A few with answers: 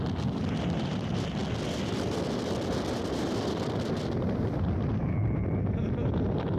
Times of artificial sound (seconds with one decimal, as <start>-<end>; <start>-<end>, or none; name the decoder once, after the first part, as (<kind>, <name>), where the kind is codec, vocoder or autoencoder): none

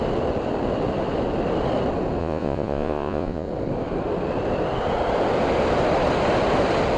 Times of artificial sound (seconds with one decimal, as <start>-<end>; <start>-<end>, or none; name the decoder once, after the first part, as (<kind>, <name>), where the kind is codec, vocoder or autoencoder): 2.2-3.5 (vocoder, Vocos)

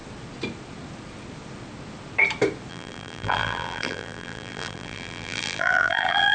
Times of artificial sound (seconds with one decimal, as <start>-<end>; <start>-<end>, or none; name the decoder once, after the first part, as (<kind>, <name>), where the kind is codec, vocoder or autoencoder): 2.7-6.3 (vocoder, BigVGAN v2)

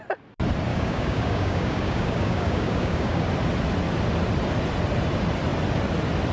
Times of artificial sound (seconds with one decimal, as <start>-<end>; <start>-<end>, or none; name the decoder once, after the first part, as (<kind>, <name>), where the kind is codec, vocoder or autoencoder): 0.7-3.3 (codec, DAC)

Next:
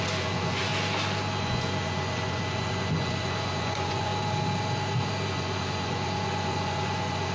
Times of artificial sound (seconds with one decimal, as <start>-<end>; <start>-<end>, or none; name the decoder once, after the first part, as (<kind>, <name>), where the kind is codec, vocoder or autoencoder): 0.0-0.7 (vocoder, Vocos); 1.4-4.1; 5.3-7.3